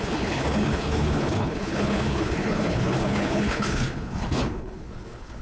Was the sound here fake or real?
fake